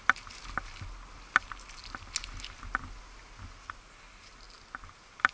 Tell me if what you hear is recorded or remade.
recorded